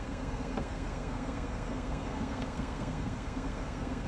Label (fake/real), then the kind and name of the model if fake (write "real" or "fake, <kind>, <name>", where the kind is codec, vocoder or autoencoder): fake, codec, SNAC